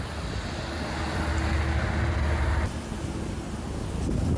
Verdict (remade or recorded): recorded